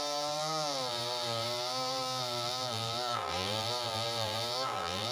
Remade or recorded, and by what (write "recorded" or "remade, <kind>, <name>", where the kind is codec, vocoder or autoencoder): remade, vocoder, BigVGAN v2